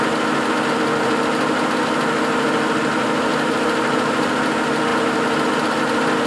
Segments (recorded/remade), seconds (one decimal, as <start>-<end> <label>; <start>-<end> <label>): 0.0-3.3 recorded; 3.3-4.3 remade; 4.3-6.3 recorded